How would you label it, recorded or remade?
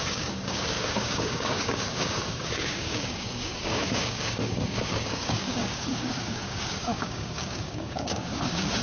remade